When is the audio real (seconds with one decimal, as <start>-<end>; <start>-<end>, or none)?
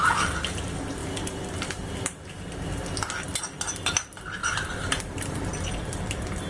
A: 0.0-4.4